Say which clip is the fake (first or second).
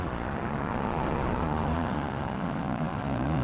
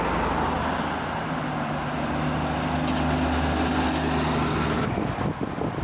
first